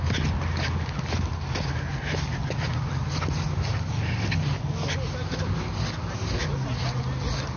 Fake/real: real